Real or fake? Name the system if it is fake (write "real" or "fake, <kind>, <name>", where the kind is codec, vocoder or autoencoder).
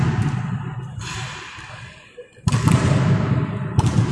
real